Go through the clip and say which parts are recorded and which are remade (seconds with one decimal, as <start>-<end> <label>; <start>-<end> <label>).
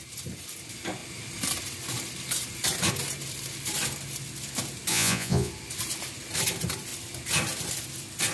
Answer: 0.0-4.9 recorded; 4.9-5.5 remade; 5.5-8.3 recorded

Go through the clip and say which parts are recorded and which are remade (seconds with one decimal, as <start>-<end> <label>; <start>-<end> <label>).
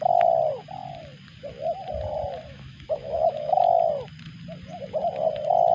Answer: 0.0-2.5 recorded; 2.5-3.9 remade; 3.9-5.7 recorded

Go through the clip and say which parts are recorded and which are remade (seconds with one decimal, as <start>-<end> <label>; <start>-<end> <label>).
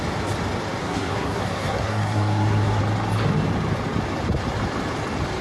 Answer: 0.0-0.8 recorded; 0.8-2.8 remade; 2.8-5.4 recorded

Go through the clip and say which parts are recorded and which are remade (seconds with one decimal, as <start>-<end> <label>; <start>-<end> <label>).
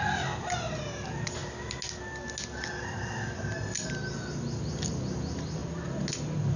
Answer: 0.0-6.6 recorded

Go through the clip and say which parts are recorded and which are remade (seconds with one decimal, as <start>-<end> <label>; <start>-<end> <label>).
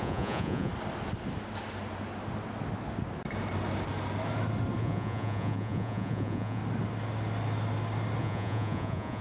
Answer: 0.0-0.7 remade; 0.7-4.8 recorded; 4.8-6.6 remade; 6.6-8.2 recorded; 8.2-9.2 remade